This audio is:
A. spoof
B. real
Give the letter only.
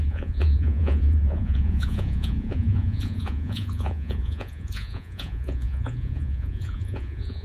A